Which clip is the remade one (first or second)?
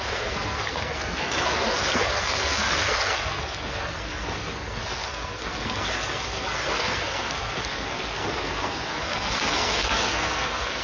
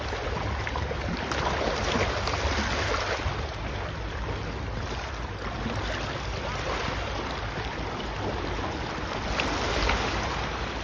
first